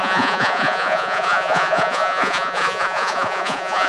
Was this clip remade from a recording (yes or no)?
yes